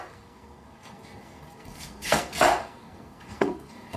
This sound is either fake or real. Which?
fake